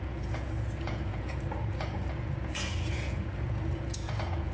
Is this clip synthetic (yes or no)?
yes